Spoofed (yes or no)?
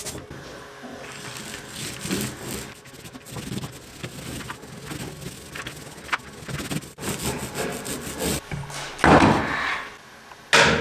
no